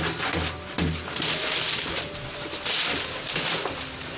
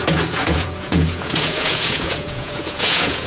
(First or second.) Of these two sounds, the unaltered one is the first